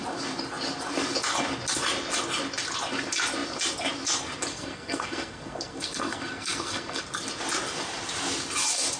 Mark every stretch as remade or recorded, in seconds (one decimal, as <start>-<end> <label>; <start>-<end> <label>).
0.0-4.5 recorded; 4.5-7.0 remade; 7.0-9.0 recorded